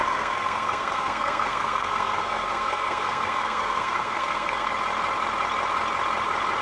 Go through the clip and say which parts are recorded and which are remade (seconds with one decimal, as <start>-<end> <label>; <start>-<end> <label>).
0.0-4.7 remade; 4.7-6.6 recorded